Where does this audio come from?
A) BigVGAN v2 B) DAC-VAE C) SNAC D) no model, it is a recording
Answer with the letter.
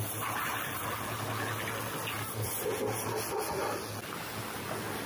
D